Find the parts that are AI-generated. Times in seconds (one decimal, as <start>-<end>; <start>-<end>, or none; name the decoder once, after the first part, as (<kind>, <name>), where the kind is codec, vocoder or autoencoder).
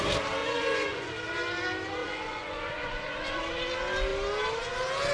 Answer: 0.4-1.1 (vocoder, Vocos); 2.0-3.4